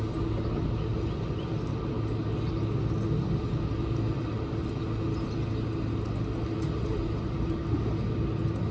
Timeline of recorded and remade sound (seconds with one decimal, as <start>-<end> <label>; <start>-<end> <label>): 0.0-8.7 recorded